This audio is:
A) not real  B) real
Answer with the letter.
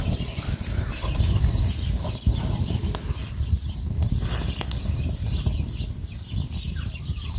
B